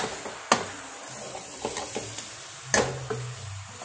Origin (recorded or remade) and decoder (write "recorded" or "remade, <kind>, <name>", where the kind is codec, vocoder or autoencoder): recorded